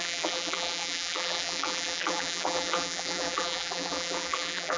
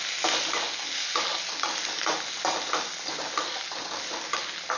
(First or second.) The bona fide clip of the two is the second